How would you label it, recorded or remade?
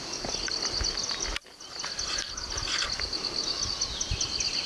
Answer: recorded